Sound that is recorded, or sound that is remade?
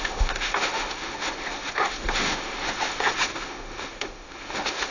remade